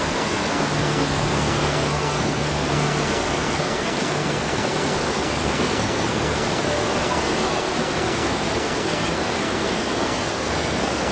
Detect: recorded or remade remade